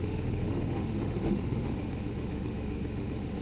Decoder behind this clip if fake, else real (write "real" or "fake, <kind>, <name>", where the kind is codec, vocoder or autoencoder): fake, autoencoder, DAC-VAE